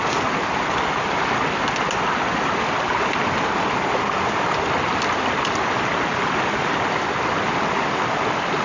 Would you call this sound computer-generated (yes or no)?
no